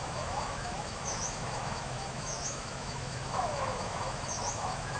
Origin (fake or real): fake